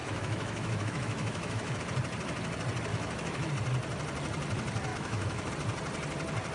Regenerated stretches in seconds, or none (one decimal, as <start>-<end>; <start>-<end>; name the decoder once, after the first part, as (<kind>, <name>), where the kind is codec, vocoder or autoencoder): 0.0-1.8 (autoencoder, DAC-VAE); 2.9-3.5; 4.9-5.5